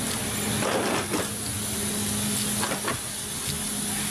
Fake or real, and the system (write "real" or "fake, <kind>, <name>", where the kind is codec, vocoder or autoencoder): real